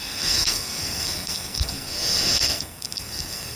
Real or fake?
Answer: fake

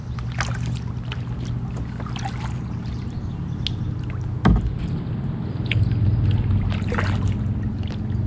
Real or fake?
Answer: real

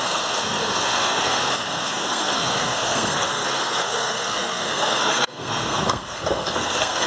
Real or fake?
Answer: fake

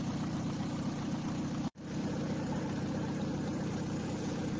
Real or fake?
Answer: fake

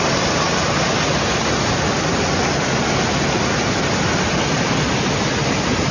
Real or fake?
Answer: real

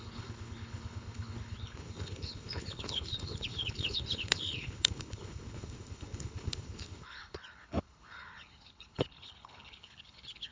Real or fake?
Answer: fake